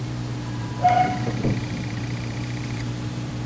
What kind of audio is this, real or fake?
fake